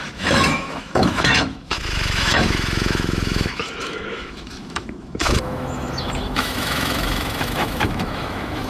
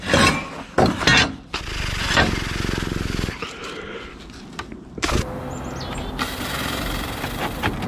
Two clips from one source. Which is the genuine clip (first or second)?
second